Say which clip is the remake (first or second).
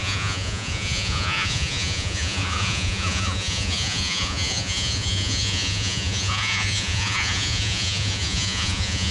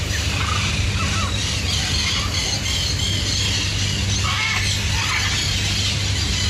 first